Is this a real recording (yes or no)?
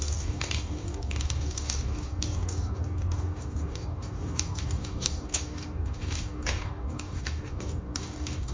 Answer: no